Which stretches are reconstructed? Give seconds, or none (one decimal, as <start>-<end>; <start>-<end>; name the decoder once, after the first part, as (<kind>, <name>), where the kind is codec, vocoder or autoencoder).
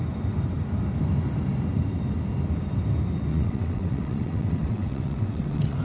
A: 3.3-5.8 (vocoder, WaveNeXt)